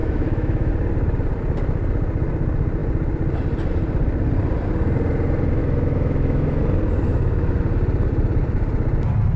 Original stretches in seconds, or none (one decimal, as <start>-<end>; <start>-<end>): 0.7-5.6; 6.6-7.1; 7.6-9.4